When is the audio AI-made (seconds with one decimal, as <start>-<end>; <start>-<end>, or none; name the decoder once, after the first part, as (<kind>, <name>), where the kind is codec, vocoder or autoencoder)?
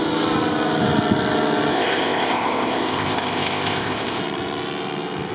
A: 1.7-4.2 (codec, ZipCodec)